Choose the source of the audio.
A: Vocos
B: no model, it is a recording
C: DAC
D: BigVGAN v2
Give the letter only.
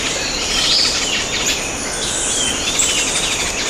B